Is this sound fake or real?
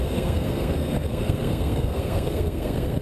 fake